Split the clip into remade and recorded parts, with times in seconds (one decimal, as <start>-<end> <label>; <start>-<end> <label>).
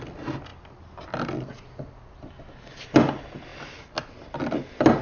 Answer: 0.0-5.0 recorded